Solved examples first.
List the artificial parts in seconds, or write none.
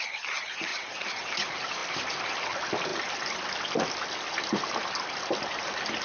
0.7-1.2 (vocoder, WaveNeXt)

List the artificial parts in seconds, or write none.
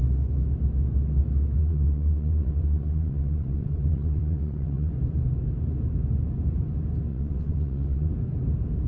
1.6-4.9 (vocoder, WaveNeXt); 7.1-8.1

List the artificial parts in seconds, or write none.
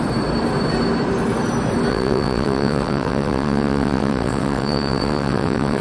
1.9-5.8 (vocoder, WaveNeXt)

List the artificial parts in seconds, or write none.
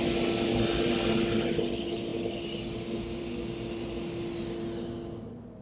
none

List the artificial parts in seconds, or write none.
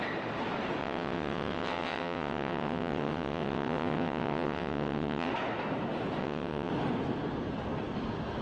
0.8-5.3 (vocoder, WaveNeXt); 6.2-6.7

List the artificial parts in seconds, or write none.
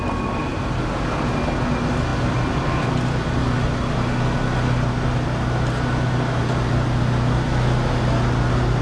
none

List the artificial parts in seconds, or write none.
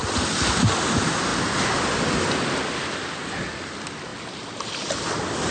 none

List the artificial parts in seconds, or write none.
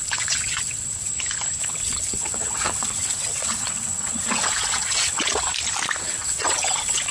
0.0-1.1 (vocoder, WaveNeXt); 1.6-5.5; 6.0-7.1